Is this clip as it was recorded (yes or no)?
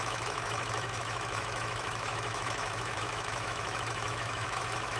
no